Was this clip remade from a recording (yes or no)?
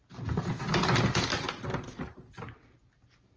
no